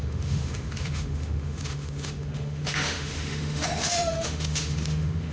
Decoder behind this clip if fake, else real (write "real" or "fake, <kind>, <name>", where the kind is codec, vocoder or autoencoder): fake, autoencoder, DAC-VAE